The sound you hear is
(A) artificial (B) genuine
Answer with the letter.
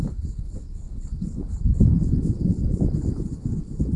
A